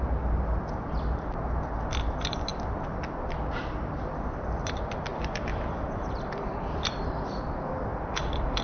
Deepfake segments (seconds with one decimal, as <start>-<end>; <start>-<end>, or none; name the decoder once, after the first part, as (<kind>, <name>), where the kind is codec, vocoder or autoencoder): 5.1-7.4 (vocoder, BigVGAN v2); 7.9-8.6